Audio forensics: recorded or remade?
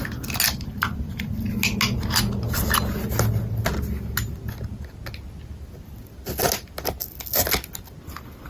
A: recorded